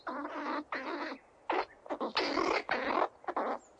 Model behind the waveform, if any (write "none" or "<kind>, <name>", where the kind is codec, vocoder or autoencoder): none